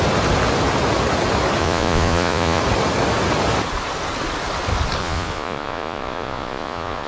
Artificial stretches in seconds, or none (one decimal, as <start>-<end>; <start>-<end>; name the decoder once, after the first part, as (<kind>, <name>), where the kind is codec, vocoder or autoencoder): 1.6-2.6 (vocoder, Vocos); 5.0-7.1